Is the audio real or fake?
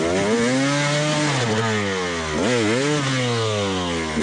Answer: real